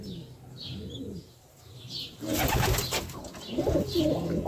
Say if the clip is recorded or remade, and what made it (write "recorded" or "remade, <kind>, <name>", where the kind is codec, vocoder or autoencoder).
recorded